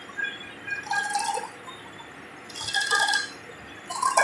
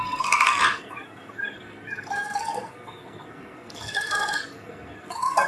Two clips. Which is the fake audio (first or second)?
second